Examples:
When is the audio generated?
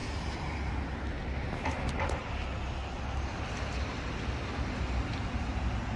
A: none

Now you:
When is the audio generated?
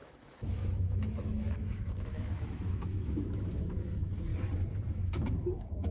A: 0.0-4.3; 4.9-5.9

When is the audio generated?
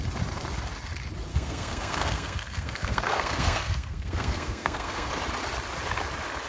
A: 1.3-5.1